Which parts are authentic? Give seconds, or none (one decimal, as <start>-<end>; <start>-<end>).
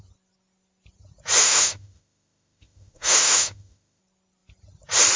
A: 0.0-1.4; 4.0-5.2